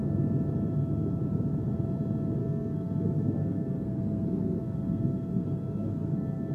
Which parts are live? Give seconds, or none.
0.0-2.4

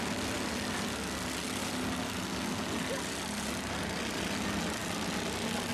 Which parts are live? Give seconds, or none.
0.0-5.7

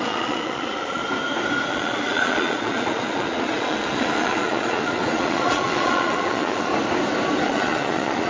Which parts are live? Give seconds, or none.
1.0-1.7; 6.7-7.4

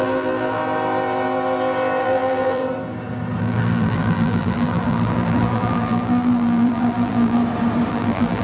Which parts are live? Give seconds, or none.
0.6-2.0; 2.6-3.4; 7.4-7.9

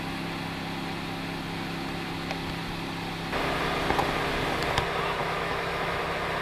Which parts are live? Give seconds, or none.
0.0-5.2; 6.0-6.4

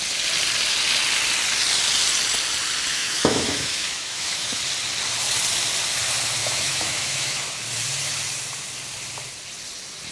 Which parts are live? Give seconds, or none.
0.0-2.9; 4.6-6.4; 7.5-10.1